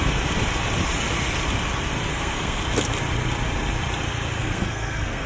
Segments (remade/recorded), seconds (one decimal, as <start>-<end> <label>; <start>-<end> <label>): 0.0-2.1 recorded; 2.1-2.6 remade; 2.6-4.4 recorded; 4.4-5.3 remade